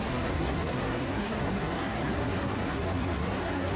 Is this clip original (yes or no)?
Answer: no